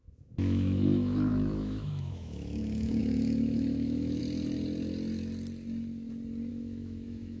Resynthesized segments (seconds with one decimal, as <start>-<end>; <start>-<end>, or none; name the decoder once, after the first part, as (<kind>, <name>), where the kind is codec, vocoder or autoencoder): 0.0-4.2 (autoencoder, DAC-VAE); 6.5-7.4